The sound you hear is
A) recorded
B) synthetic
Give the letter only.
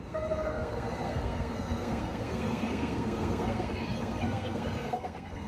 B